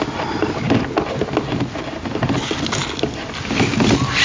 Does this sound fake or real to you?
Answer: real